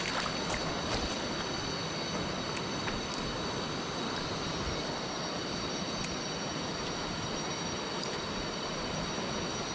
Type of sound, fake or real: real